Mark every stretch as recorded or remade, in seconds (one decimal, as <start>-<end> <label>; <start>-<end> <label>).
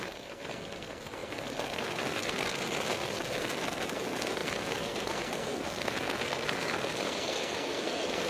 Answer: 0.0-8.3 remade